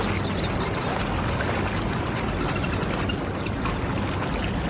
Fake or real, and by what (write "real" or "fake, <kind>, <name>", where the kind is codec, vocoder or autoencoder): real